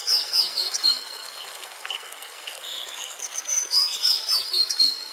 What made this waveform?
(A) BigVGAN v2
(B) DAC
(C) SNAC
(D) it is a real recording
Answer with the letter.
C